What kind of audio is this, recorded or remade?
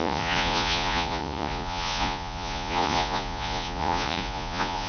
remade